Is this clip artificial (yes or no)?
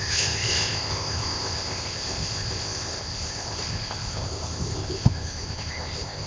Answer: yes